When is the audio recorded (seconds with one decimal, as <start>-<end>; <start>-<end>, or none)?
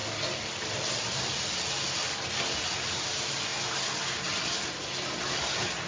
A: 0.0-5.9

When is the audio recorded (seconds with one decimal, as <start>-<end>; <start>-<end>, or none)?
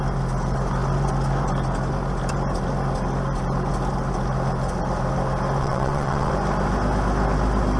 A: 0.0-5.6; 6.3-7.8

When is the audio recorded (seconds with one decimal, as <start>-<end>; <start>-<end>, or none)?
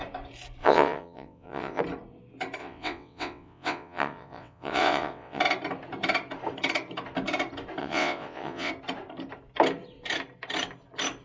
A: 0.0-0.6; 1.8-2.6; 5.4-7.8; 8.7-11.2